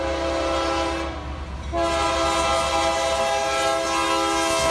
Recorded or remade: recorded